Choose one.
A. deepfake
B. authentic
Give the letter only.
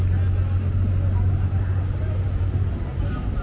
B